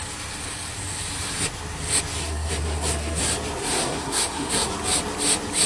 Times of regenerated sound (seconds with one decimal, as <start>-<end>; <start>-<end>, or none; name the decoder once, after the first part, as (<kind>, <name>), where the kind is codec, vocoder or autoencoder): 2.2-3.2 (codec, SNAC); 3.6-4.7